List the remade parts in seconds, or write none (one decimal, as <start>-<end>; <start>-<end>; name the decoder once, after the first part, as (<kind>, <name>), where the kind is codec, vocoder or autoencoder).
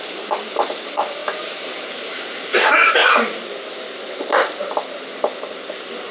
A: 0.0-3.0 (vocoder, BigVGAN v2)